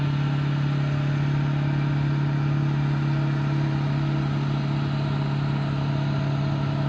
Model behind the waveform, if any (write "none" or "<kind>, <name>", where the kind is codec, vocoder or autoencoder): none